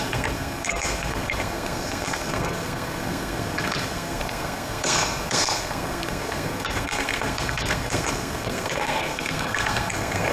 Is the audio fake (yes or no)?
yes